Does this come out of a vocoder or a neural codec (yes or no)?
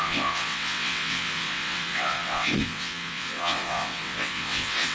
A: yes